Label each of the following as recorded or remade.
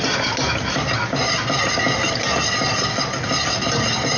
recorded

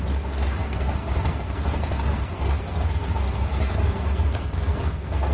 remade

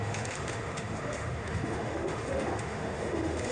remade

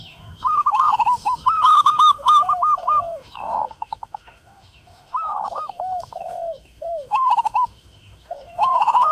remade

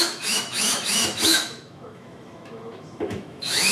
remade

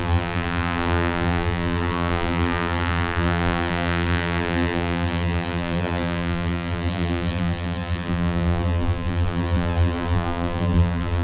remade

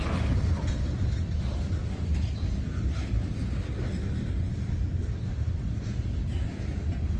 recorded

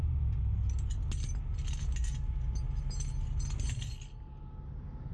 recorded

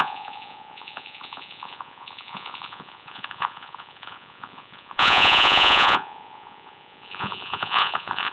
remade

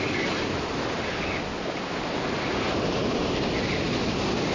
recorded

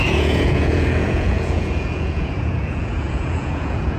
remade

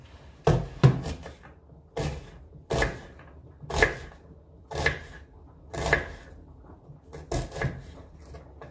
recorded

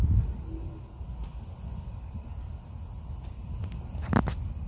recorded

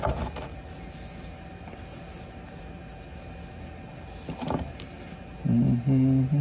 recorded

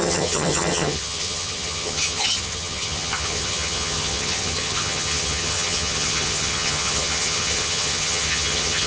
remade